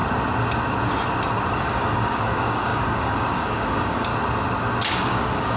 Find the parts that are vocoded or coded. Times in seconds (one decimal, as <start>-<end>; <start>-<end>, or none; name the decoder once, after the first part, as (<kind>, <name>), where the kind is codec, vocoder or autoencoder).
1.5-4.1 (codec, DAC); 4.9-5.6